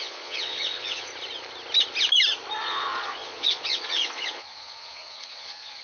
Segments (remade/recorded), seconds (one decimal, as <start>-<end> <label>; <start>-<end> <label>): 0.0-1.1 remade; 1.1-2.6 recorded; 2.6-5.8 remade